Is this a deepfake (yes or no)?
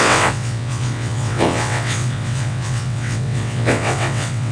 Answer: yes